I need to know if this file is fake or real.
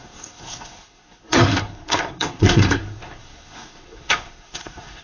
fake